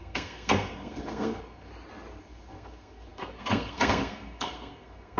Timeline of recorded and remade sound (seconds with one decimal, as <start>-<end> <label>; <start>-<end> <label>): 0.0-1.7 remade; 1.7-2.2 recorded; 2.2-5.2 remade